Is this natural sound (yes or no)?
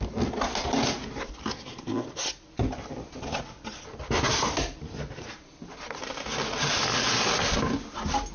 yes